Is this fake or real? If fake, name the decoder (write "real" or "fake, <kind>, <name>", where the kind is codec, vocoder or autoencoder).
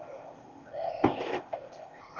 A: fake, codec, ZipCodec